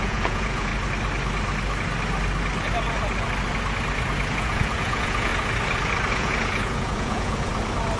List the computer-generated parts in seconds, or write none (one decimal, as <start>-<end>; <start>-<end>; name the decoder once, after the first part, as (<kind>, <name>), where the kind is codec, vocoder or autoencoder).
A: 0.0-0.7 (vocoder, Vocos); 4.3-5.3; 6.1-7.5